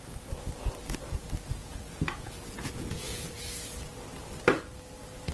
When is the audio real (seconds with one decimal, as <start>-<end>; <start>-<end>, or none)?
0.0-1.6; 3.4-5.3